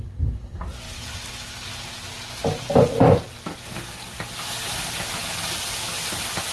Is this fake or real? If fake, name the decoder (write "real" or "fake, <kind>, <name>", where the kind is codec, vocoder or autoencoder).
real